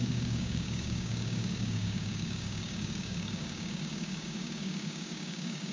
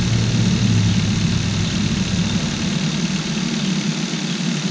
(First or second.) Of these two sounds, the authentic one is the second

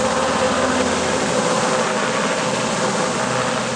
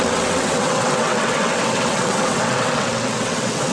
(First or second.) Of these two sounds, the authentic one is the first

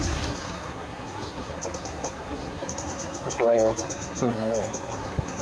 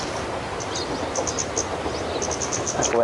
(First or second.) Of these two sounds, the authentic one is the second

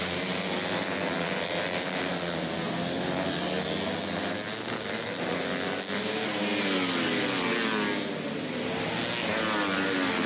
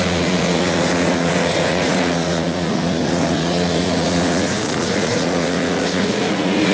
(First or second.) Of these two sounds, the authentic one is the first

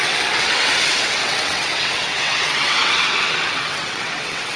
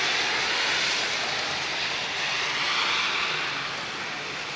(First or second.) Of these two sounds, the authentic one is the second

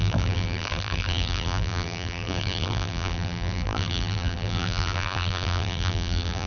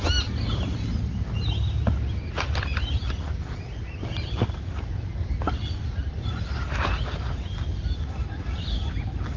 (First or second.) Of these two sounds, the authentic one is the second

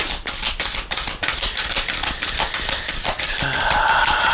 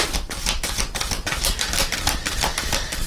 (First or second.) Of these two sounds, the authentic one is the second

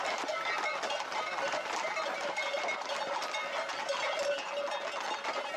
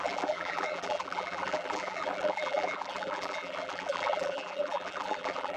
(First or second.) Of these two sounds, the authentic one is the first